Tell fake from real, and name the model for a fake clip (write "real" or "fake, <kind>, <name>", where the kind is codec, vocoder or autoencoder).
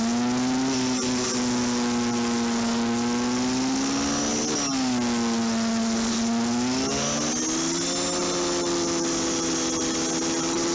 real